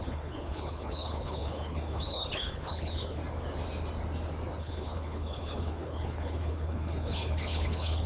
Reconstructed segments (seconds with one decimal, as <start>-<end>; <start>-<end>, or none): 0.0-3.2; 4.6-8.1